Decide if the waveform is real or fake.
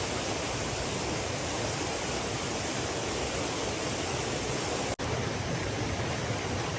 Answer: real